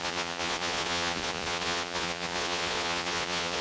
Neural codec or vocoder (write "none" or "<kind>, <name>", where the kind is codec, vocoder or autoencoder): vocoder, Vocos